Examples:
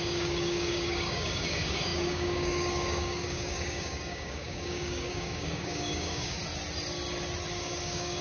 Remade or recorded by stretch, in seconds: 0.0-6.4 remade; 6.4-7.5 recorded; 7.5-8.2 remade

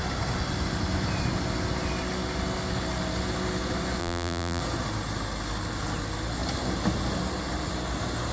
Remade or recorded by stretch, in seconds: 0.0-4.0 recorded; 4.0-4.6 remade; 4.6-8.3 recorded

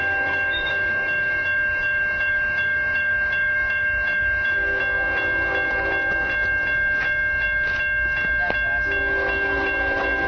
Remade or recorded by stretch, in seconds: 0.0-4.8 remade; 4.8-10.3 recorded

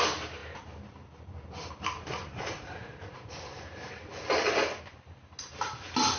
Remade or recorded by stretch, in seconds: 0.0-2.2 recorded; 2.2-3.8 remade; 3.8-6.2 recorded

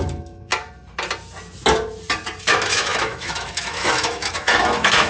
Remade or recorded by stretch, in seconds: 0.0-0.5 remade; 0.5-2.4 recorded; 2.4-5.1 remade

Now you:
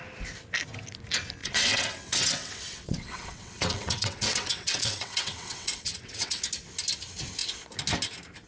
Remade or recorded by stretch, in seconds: 0.0-1.4 recorded; 1.4-6.4 remade; 6.4-8.5 recorded

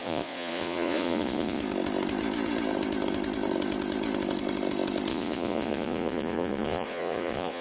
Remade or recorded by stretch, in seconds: 0.0-1.6 remade; 1.6-5.1 recorded; 5.1-7.6 remade

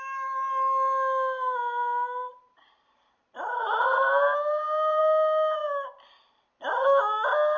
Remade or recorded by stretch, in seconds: 0.0-2.3 recorded; 2.3-5.0 remade; 5.0-7.6 recorded